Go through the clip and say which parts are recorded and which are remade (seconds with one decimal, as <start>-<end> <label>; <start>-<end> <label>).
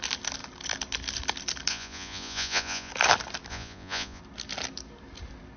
0.0-1.7 recorded; 1.7-2.9 remade; 2.9-3.5 recorded; 3.5-4.2 remade; 4.2-5.6 recorded